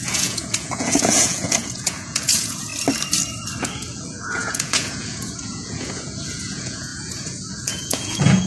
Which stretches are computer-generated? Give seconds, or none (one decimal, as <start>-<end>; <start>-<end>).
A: 0.0-2.7; 3.6-8.5